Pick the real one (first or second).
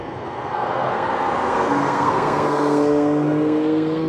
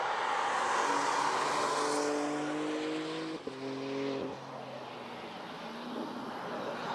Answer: second